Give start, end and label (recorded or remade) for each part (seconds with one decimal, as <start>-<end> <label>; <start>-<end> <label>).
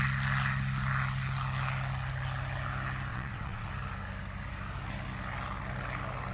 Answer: 0.0-3.1 recorded; 3.1-3.7 remade; 3.7-6.3 recorded